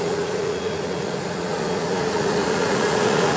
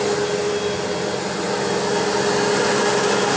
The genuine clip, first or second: second